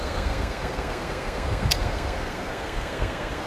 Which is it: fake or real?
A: fake